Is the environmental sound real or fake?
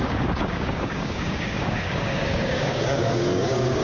fake